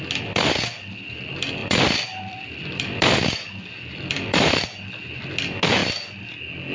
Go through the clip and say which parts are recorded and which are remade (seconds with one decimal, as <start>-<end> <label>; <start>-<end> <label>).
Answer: 0.0-1.6 recorded; 1.6-4.6 remade; 4.6-6.7 recorded